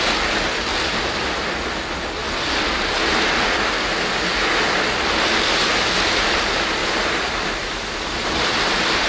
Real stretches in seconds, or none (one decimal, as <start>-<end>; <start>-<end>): 0.0-0.7; 1.3-2.2; 2.9-6.8